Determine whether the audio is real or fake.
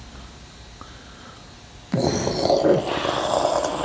real